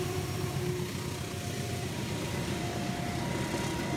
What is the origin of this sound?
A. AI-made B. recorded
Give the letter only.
B